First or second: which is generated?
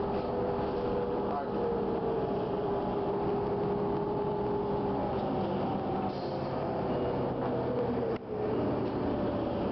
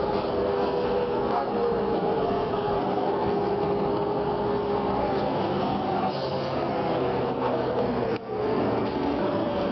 second